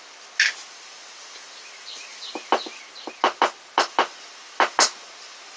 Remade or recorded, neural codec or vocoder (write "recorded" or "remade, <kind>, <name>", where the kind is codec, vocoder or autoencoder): recorded